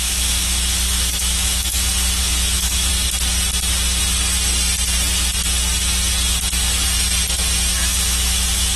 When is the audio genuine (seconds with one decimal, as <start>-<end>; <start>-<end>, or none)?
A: 2.9-7.7